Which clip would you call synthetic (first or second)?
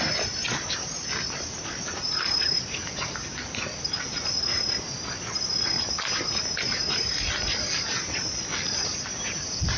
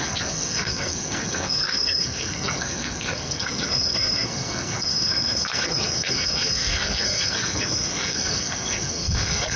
second